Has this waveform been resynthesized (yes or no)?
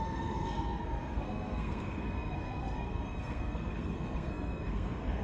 yes